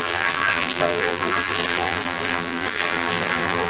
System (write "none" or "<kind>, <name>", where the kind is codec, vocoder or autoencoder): vocoder, BigVGAN v2